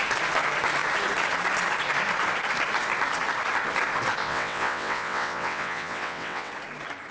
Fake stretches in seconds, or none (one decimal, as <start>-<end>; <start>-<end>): 4.2-6.5